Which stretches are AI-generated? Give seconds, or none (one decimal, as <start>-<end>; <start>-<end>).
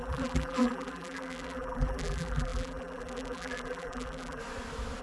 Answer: 0.0-4.4